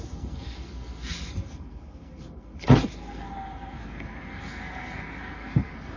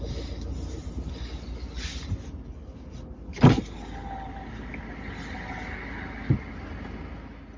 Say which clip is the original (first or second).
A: second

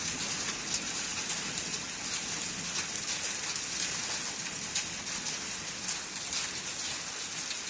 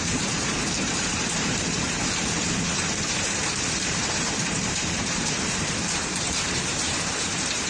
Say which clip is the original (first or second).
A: first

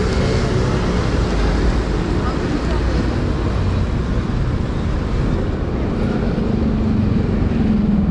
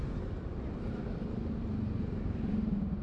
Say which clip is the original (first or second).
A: first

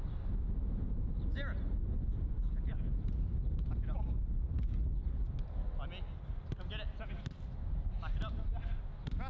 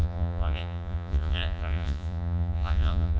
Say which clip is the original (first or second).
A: first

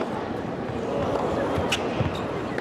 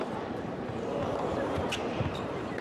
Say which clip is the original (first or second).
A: first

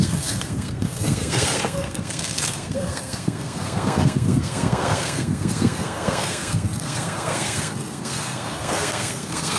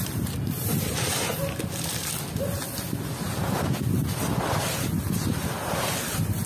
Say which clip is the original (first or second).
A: second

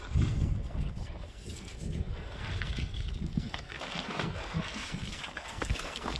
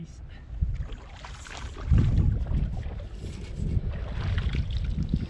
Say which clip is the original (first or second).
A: second